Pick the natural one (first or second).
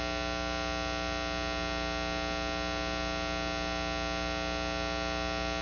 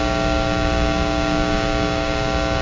first